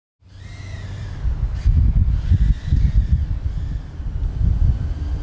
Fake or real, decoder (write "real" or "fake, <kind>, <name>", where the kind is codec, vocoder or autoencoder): real